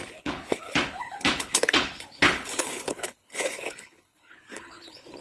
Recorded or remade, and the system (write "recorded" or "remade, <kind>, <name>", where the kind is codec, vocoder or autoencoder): remade, codec, HILCodec